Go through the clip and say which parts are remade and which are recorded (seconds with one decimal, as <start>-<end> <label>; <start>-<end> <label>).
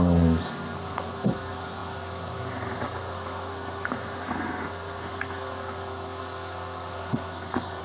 0.0-7.8 remade